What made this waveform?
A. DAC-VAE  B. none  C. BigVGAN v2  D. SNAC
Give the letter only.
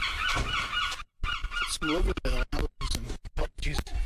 B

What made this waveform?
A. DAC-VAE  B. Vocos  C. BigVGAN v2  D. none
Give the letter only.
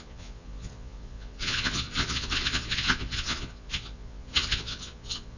B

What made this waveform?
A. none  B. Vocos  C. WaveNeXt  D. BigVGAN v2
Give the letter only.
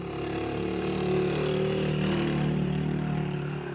A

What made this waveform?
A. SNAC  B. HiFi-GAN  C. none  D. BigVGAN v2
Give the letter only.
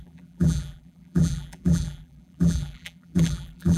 D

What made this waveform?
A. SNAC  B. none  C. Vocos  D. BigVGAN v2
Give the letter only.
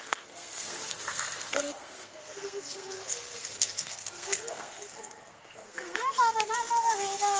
A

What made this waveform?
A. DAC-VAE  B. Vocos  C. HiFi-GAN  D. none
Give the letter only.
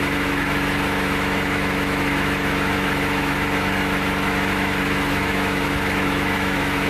A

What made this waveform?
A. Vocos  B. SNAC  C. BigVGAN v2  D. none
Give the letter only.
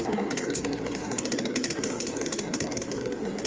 B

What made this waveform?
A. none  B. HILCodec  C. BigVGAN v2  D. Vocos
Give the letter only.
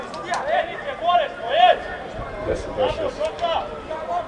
A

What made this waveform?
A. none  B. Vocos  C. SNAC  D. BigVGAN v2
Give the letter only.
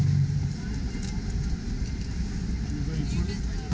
A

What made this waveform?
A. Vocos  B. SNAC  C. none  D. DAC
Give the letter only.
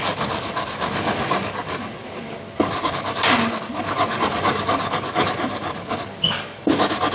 D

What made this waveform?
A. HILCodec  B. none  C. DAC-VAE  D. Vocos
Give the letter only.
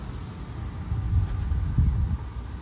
B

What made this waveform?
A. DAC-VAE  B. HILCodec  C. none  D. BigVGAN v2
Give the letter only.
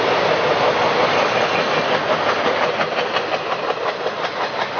C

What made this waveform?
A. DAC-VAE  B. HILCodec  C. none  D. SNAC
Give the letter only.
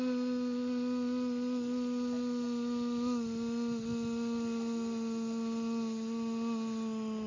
C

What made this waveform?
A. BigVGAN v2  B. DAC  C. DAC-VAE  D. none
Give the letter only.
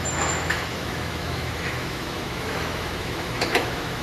C